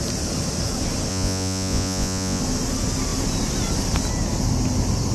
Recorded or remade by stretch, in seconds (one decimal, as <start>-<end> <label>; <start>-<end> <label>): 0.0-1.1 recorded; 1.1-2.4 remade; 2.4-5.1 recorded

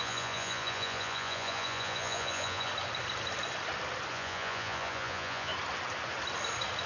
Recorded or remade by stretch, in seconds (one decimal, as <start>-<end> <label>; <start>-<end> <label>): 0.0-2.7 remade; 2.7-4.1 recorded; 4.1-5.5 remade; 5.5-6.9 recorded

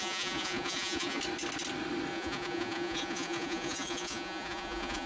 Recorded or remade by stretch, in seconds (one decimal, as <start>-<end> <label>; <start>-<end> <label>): 0.0-1.2 remade; 1.2-2.1 recorded; 2.1-5.1 remade